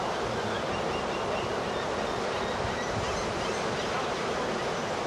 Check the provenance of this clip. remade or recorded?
recorded